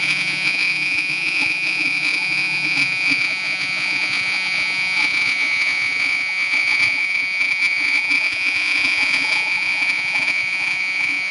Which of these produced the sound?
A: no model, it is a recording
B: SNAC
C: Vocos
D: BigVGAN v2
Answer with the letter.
C